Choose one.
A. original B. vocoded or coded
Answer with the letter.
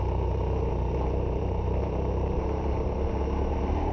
B